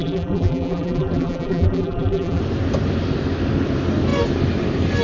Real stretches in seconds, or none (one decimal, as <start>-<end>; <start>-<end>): 2.4-5.0